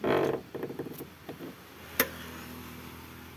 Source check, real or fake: real